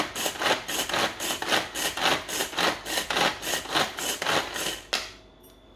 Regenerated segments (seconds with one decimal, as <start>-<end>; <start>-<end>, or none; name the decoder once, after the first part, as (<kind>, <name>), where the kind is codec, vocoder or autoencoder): none